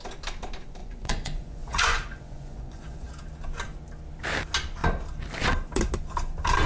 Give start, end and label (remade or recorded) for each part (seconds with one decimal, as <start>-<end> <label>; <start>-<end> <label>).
0.0-0.8 recorded; 0.8-3.1 remade; 3.1-6.7 recorded